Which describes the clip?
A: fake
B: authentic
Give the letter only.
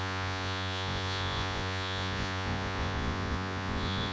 A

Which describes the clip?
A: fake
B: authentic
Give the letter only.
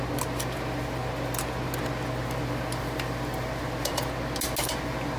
B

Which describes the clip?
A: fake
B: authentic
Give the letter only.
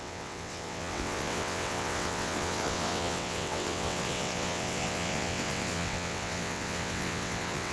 A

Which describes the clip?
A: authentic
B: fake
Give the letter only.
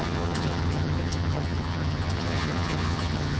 B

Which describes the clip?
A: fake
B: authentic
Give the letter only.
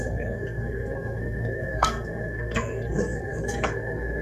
A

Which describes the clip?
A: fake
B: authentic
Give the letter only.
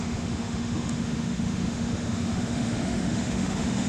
A